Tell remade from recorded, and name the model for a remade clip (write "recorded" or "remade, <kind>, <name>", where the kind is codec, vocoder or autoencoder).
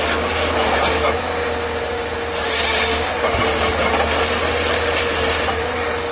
recorded